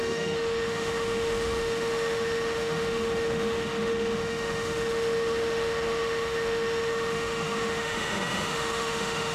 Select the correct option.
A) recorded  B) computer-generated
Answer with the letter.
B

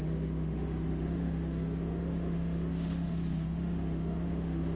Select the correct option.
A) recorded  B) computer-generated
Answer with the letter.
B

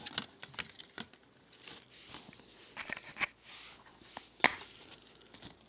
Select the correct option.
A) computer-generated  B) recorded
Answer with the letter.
B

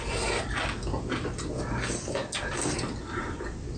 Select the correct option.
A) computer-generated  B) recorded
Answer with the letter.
B